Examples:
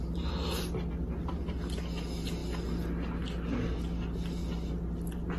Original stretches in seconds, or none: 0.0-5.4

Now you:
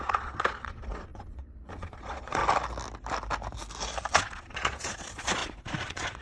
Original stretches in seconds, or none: 2.4-4.1

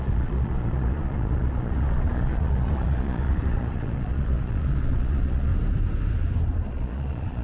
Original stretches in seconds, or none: 5.5-6.7

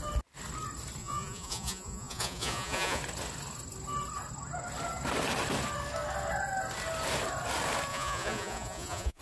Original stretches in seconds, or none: 0.0-1.0; 3.0-7.9

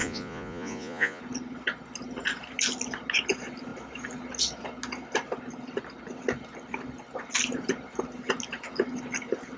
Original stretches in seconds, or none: 1.2-9.6

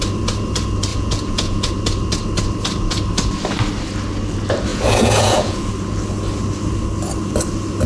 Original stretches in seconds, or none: 0.0-0.9; 1.7-4.7; 5.7-7.9

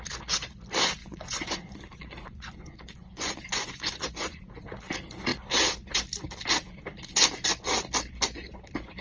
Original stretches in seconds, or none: 0.0-1.0; 4.4-9.0